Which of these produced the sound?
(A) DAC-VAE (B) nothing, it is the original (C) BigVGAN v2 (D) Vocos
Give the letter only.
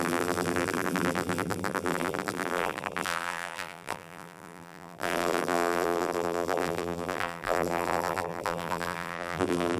C